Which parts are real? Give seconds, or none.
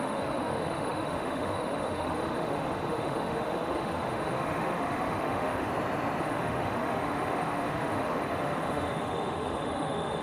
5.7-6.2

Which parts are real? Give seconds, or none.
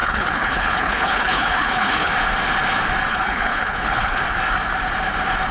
2.1-3.1; 4.2-5.5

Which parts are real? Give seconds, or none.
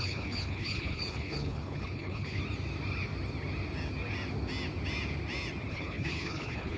2.4-5.7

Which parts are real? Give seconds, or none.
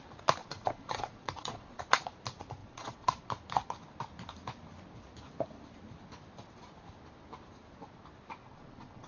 0.0-0.4; 1.8-2.6; 3.3-8.4